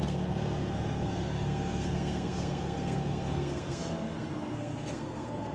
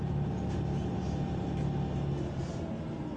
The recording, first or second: second